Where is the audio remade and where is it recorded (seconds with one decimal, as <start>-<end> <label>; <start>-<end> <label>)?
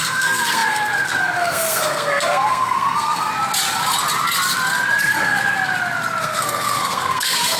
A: 0.0-3.3 remade; 3.3-5.0 recorded; 5.0-5.4 remade; 5.4-6.2 recorded; 6.2-7.6 remade